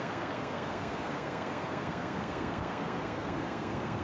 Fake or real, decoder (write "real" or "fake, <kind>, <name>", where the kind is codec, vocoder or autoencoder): fake, codec, SNAC